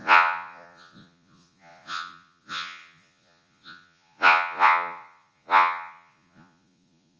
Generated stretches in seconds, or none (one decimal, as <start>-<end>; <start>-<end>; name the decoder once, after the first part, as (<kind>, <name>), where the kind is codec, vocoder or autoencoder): 0.0-7.2 (vocoder, Vocos)